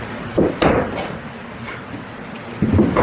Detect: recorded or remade recorded